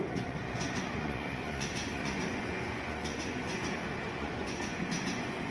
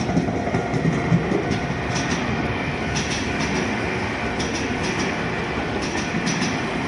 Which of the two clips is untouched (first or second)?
second